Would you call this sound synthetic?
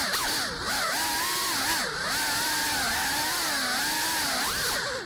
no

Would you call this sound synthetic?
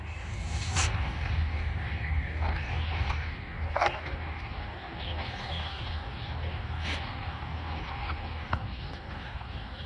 yes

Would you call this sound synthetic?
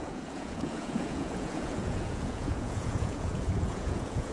yes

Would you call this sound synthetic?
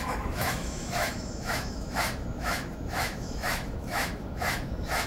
yes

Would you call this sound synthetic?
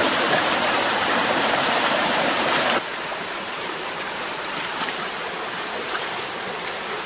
yes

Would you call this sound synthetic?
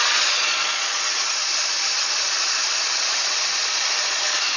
yes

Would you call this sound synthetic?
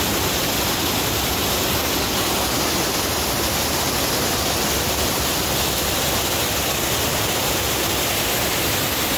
no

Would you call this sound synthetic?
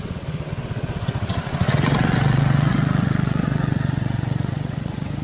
yes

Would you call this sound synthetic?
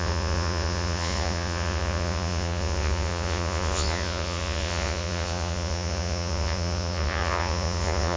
yes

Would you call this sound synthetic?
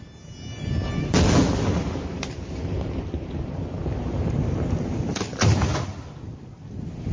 no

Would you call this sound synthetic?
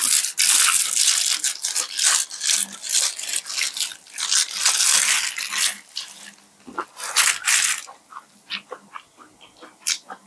no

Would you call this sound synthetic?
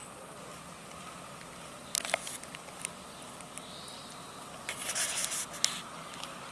no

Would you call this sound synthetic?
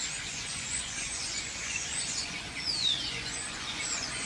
yes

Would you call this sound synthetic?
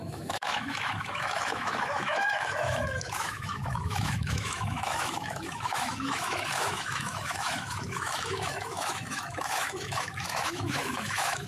yes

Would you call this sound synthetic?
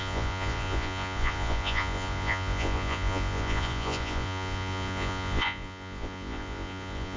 yes